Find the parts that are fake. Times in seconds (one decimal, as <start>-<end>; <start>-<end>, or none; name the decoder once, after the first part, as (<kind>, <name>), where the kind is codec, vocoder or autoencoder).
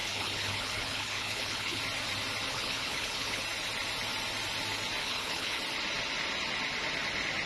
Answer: 0.0-1.8 (codec, HILCodec); 2.5-3.4; 5.0-5.6